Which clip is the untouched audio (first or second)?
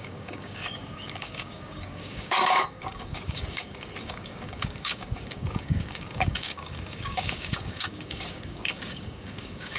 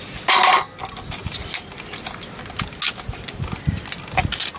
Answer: second